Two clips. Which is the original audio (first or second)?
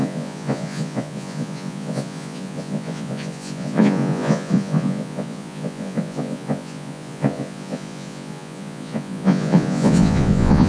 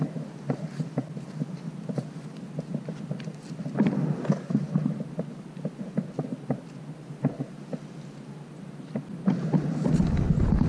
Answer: second